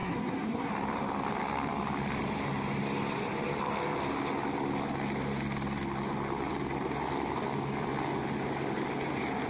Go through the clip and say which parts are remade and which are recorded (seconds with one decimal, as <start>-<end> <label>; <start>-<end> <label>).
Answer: 0.0-0.7 remade; 0.7-9.5 recorded